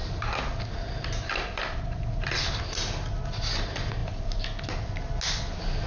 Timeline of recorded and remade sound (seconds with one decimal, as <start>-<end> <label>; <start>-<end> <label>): 0.0-5.9 recorded